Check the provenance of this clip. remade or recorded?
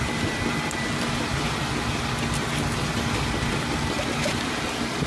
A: recorded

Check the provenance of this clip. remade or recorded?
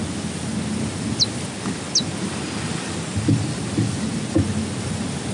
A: recorded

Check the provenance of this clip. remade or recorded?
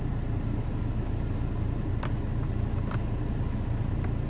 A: recorded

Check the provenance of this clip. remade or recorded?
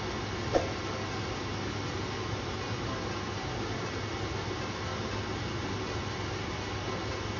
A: recorded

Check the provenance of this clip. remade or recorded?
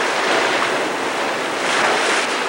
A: recorded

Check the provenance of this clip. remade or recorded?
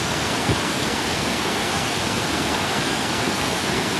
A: remade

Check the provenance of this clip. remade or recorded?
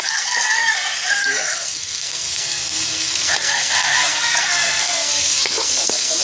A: remade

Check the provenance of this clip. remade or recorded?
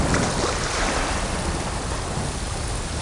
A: recorded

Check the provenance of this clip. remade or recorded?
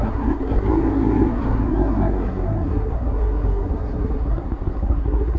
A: remade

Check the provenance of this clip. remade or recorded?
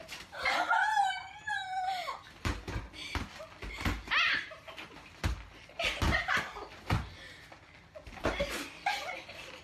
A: recorded